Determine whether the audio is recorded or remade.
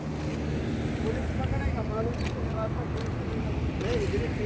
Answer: recorded